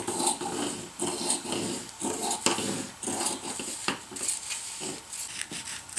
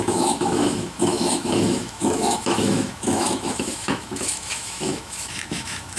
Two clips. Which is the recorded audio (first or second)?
first